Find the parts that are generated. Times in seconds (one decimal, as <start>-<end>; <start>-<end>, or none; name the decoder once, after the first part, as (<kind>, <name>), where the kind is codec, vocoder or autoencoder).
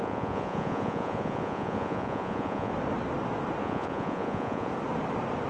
0.0-2.7 (vocoder, Vocos); 3.6-4.7